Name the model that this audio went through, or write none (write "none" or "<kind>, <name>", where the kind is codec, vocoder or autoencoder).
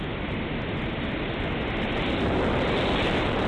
none